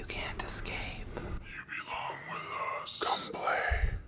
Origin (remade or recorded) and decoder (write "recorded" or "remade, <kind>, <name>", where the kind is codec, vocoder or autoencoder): recorded